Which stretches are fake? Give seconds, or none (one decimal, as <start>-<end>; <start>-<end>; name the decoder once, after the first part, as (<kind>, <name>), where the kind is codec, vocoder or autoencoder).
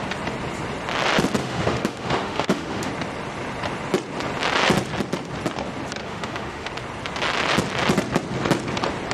1.4-2.9 (autoencoder, DAC-VAE); 6.0-6.7